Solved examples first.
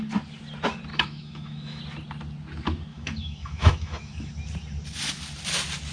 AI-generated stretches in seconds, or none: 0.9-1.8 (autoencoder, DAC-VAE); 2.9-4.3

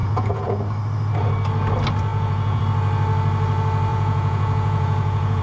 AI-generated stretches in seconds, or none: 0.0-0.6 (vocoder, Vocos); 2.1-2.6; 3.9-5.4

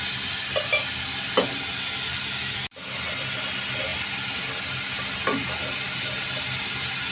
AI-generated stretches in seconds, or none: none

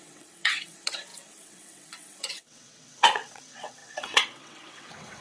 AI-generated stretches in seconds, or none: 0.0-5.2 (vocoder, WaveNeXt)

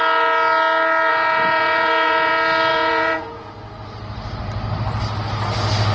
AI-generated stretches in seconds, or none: 1.1-2.3 (vocoder, Vocos); 2.7-3.5

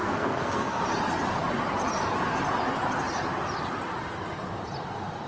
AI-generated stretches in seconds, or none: 0.0-0.8 (codec, SNAC)